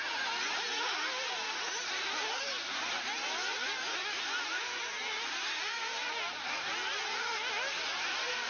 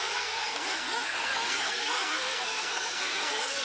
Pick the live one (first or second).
first